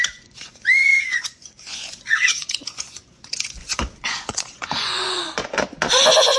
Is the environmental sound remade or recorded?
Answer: remade